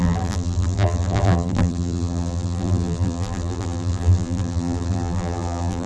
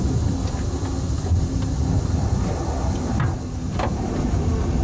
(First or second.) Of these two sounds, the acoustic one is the second